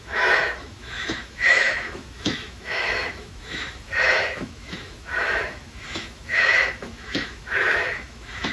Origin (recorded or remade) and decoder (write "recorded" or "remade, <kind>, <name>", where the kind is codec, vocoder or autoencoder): remade, autoencoder, DAC-VAE